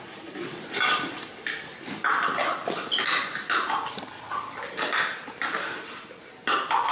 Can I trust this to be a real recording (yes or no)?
yes